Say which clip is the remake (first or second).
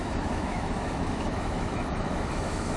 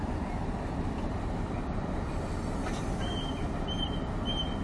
first